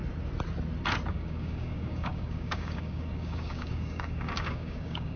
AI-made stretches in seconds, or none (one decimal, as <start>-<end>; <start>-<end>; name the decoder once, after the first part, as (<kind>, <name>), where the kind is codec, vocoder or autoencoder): 1.1-5.2 (codec, DAC)